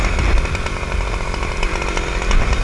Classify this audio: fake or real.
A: real